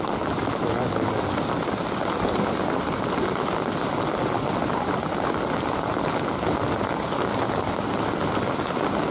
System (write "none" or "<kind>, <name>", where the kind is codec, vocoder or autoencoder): none